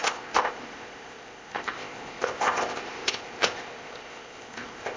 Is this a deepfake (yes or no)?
yes